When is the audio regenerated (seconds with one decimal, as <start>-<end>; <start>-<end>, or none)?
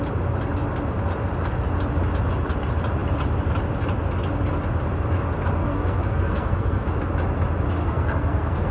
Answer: 5.6-6.9; 7.8-8.7